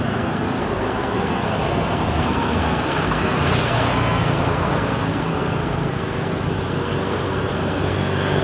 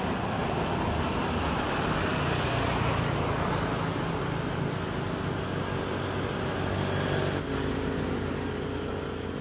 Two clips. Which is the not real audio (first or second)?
first